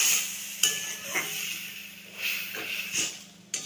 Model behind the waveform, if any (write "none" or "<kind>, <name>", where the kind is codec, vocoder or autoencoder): none